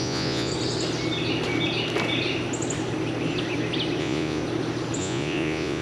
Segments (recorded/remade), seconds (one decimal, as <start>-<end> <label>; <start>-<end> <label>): 0.0-0.5 remade; 0.5-4.0 recorded; 4.0-4.4 remade; 4.4-5.0 recorded; 5.0-5.8 remade